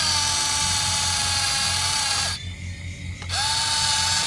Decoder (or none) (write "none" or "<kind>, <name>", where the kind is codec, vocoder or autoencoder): none